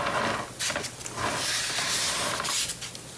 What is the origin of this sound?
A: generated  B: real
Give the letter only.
B